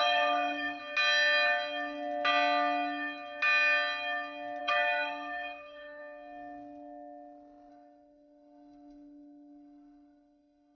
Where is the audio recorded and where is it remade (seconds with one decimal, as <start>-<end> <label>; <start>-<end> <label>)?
0.0-0.8 remade; 0.8-4.6 recorded; 4.6-6.0 remade; 6.0-7.7 recorded; 7.7-10.7 remade